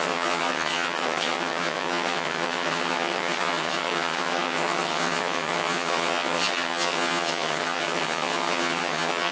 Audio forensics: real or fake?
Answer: fake